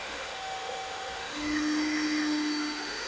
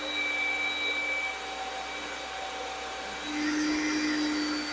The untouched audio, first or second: second